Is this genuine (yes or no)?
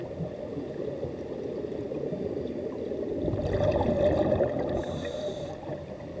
yes